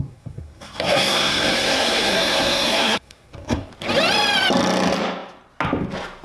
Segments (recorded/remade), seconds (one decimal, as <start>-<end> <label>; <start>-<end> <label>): 0.0-3.7 remade; 3.7-6.2 recorded